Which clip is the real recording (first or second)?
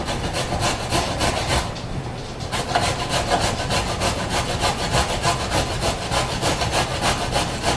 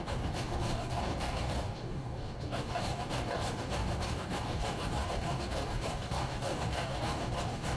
first